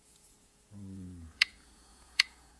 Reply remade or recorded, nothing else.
remade